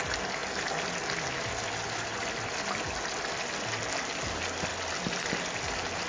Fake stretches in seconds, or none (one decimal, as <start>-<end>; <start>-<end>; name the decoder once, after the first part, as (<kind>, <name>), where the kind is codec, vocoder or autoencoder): 4.7-5.6 (vocoder, BigVGAN v2)